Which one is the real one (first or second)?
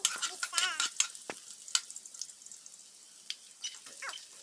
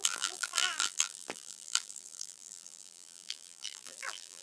first